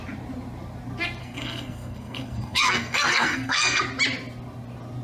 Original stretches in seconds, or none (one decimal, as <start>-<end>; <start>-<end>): 0.0-1.2; 3.8-5.0